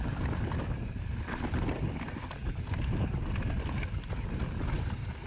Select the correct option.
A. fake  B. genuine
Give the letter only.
B